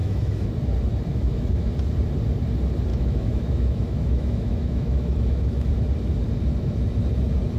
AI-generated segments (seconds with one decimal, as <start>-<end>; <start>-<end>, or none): 0.0-0.5; 1.1-1.7; 2.9-5.7